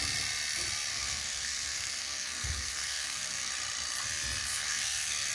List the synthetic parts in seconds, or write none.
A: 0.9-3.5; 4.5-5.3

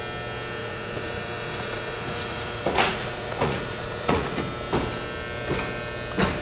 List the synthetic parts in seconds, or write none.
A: 0.6-4.4

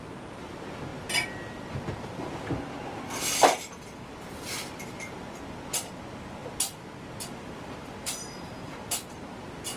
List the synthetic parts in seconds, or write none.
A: none